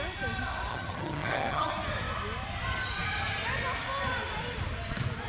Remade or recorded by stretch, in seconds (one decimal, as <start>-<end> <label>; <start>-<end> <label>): 0.0-0.7 recorded; 0.7-1.7 remade; 1.7-5.3 recorded